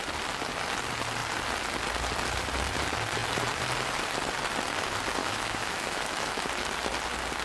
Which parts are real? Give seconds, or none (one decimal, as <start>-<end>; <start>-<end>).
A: 0.0-5.2; 6.4-7.4